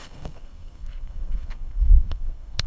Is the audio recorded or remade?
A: remade